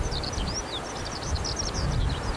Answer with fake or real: real